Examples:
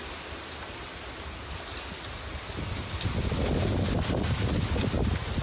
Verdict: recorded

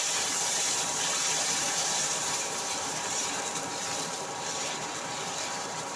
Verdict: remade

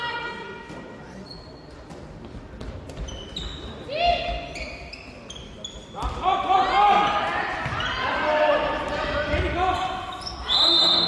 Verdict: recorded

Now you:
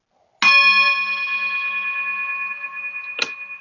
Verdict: recorded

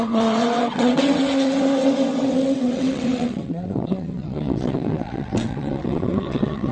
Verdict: remade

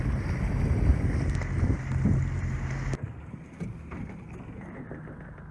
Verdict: recorded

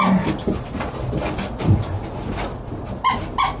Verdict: recorded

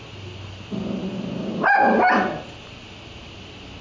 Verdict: recorded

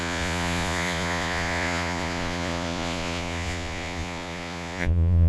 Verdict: remade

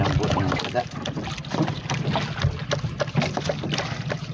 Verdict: recorded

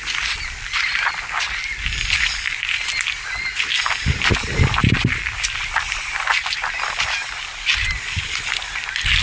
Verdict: recorded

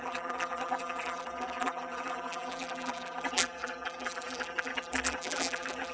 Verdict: remade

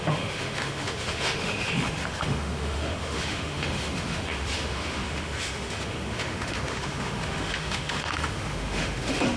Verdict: remade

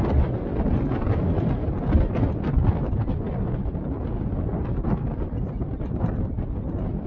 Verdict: recorded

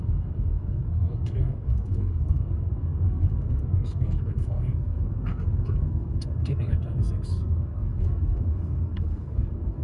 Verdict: remade